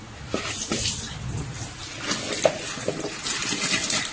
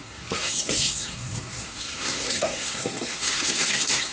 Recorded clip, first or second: first